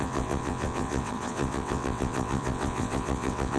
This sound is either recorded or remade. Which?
remade